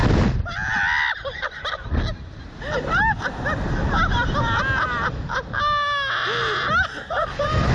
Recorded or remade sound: recorded